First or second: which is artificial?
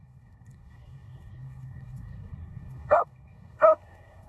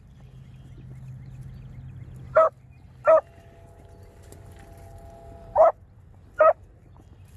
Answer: first